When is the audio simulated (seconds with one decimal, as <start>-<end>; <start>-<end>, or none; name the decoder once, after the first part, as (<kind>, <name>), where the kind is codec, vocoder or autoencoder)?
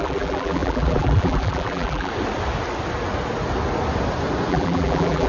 0.0-2.1 (vocoder, BigVGAN v2); 4.5-5.3